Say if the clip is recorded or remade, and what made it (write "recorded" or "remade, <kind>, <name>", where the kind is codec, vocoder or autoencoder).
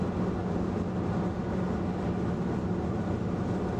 recorded